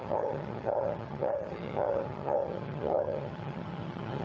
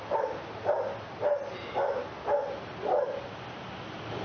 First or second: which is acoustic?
second